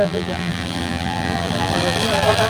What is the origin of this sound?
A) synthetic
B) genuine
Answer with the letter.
A